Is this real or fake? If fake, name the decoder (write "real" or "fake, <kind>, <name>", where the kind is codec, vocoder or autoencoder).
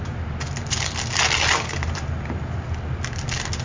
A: real